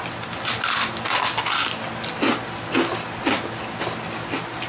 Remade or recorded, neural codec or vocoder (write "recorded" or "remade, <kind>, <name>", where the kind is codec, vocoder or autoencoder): recorded